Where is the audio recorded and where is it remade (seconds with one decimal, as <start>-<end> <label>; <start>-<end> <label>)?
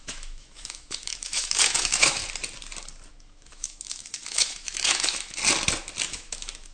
0.0-2.2 remade; 2.2-3.1 recorded; 3.1-5.4 remade; 5.4-6.1 recorded; 6.1-6.7 remade